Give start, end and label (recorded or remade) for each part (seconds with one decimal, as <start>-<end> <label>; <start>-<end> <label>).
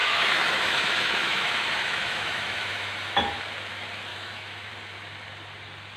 0.0-3.4 remade; 3.4-4.1 recorded; 4.1-4.7 remade; 4.7-6.0 recorded